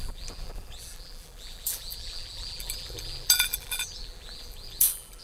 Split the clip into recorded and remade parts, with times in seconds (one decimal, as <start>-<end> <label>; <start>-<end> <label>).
0.0-5.2 remade

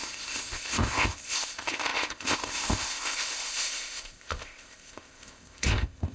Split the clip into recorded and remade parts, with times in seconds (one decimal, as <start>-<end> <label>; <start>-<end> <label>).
0.0-6.1 remade

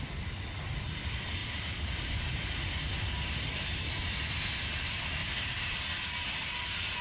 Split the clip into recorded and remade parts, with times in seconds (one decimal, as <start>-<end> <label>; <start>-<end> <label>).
0.0-1.4 recorded; 1.4-3.9 remade; 3.9-5.2 recorded; 5.2-5.8 remade; 5.8-7.0 recorded